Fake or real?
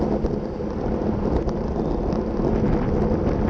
real